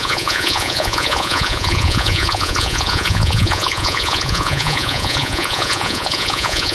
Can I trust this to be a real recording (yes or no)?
no